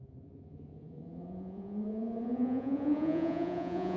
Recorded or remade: remade